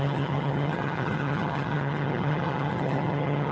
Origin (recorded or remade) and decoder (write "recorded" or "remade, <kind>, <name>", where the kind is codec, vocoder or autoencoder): remade, vocoder, HiFi-GAN